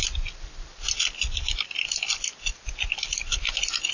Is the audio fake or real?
real